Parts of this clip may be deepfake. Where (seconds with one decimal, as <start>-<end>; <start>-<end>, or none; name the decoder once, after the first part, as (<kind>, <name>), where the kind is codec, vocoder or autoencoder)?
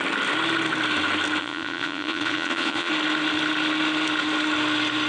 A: 1.4-2.9 (vocoder, Vocos)